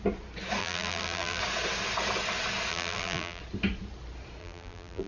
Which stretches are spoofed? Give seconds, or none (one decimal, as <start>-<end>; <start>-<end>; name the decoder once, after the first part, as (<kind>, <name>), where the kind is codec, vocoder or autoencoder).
0.6-1.4 (vocoder, BigVGAN v2); 2.7-3.4; 4.4-5.1

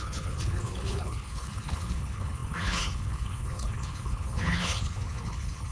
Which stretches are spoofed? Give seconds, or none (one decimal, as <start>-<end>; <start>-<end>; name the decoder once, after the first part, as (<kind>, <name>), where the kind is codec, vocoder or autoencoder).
0.0-5.7 (codec, HILCodec)